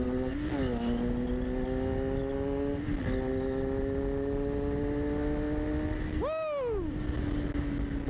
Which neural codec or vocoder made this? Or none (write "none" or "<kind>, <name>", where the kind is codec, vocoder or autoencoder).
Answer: none